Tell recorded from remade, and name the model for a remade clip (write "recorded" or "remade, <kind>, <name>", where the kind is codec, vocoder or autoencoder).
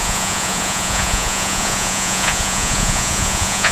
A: remade, vocoder, Vocos